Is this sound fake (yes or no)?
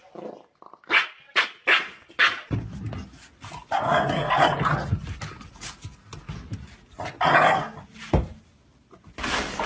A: no